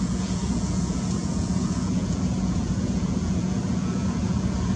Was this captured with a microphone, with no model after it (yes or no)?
no